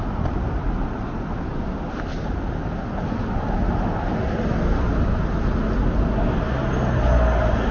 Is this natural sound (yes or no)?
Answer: yes